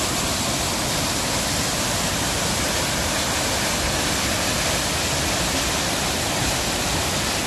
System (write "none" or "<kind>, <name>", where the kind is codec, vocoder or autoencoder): none